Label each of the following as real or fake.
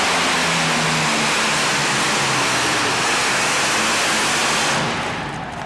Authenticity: real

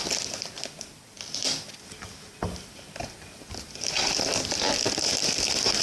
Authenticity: real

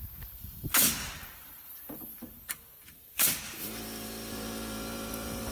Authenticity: fake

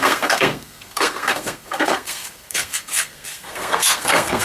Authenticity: fake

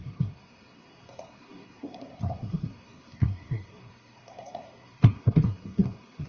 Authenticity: fake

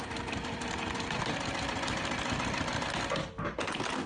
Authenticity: real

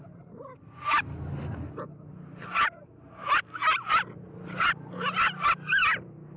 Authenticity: real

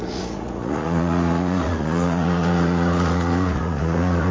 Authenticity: fake